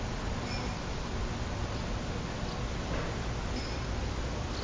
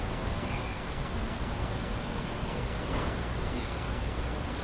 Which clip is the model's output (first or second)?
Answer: second